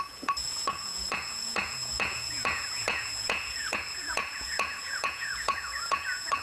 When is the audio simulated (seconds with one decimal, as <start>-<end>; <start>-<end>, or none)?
0.0-6.4